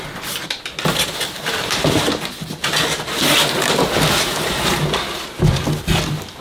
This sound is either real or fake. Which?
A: real